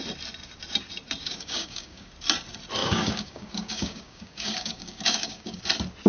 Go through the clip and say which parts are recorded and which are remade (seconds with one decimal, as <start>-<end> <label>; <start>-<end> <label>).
0.0-1.2 recorded; 1.2-2.1 remade; 2.1-2.8 recorded; 2.8-5.6 remade; 5.6-6.1 recorded